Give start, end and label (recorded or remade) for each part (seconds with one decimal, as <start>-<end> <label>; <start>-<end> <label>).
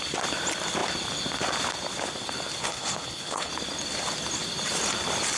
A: 0.0-2.6 recorded; 2.6-3.5 remade; 3.5-5.4 recorded